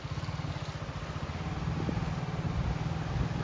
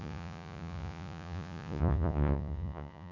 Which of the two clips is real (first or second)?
first